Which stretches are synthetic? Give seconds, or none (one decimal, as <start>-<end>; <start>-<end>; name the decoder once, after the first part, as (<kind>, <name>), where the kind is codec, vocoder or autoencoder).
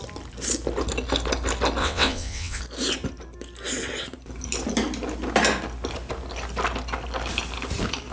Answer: 1.8-2.6 (vocoder, WaveNeXt)